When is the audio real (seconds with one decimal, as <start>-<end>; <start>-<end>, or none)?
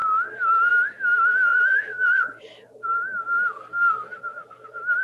0.0-1.5; 2.4-5.0